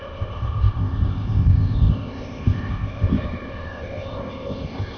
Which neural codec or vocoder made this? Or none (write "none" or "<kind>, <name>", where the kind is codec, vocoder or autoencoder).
codec, ZipCodec